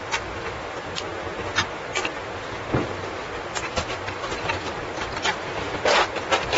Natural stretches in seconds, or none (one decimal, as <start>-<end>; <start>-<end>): 0.0-6.6